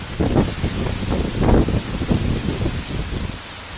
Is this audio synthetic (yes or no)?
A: no